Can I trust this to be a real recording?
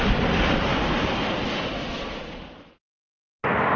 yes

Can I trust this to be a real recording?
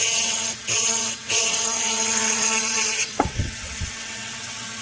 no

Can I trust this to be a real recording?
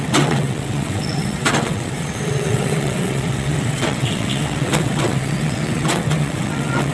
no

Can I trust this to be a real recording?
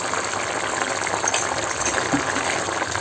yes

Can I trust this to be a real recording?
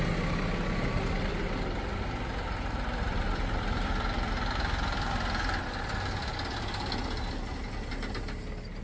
yes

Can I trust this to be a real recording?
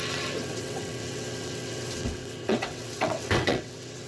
no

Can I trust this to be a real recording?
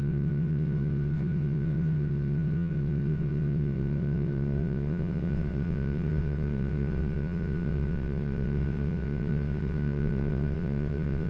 no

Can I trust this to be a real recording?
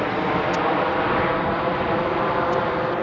yes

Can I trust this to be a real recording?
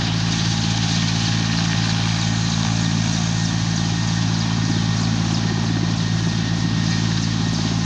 yes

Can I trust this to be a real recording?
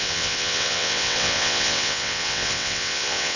no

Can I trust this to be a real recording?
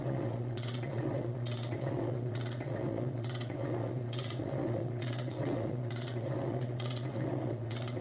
no